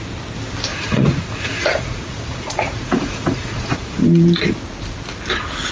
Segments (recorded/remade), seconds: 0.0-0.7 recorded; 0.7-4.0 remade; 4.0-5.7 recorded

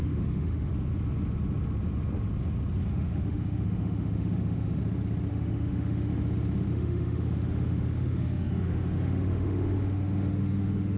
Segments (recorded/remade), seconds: 0.0-0.7 remade; 0.7-2.9 recorded; 2.9-4.8 remade; 4.8-5.3 recorded; 5.3-6.1 remade; 6.1-6.7 recorded; 6.7-11.0 remade